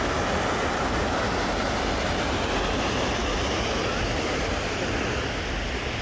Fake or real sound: real